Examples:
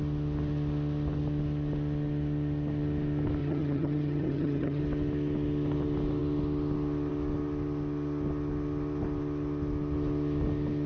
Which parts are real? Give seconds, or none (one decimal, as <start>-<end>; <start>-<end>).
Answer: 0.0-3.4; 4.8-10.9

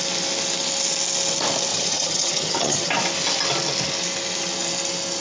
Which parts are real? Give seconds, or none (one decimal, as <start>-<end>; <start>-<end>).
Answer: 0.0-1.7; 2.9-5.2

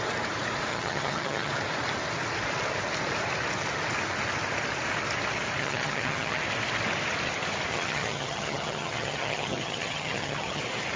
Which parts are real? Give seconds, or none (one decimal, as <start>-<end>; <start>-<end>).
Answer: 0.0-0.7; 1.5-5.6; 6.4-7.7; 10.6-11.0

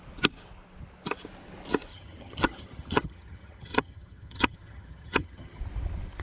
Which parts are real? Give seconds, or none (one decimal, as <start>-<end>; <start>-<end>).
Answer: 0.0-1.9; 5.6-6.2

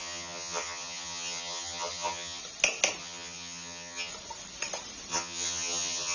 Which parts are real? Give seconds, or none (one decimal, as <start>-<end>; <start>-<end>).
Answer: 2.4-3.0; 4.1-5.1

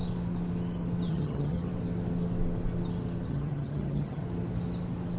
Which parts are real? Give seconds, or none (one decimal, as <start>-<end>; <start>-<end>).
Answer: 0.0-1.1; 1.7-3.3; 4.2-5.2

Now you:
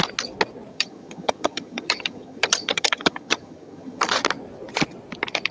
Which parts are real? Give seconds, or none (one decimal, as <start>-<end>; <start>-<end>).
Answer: 0.0-0.7; 4.0-5.5